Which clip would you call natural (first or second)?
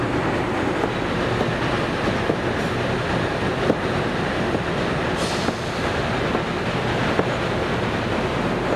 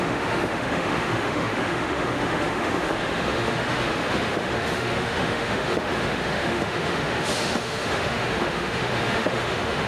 first